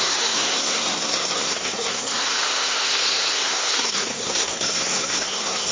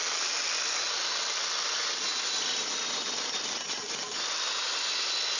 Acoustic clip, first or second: second